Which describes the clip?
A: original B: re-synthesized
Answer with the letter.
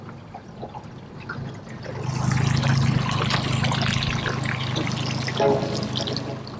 A